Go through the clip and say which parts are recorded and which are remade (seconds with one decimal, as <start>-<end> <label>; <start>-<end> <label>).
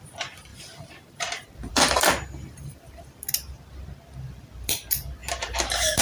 0.0-0.5 recorded; 0.5-3.0 remade; 3.0-5.2 recorded; 5.2-6.0 remade